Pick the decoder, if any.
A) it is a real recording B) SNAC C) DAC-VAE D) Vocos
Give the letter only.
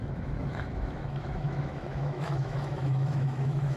C